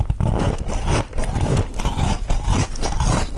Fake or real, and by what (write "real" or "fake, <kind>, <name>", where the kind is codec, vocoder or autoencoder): real